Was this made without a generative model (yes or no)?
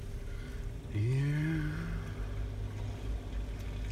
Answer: yes